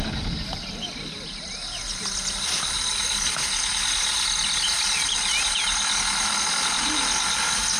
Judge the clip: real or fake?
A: real